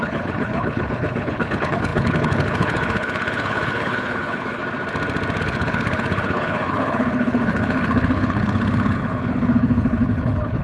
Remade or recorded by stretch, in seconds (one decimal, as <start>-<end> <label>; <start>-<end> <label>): 0.0-4.6 remade; 4.6-5.4 recorded; 5.4-10.6 remade